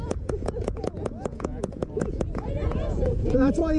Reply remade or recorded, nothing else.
remade